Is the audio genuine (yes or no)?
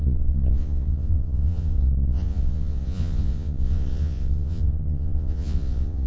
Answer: no